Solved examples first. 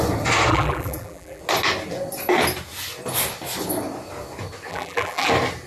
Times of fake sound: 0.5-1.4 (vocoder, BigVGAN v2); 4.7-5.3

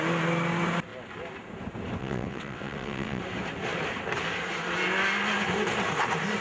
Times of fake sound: 2.0-3.2 (vocoder, WaveNeXt)

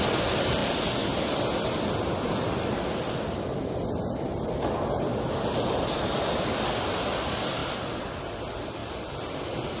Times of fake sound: none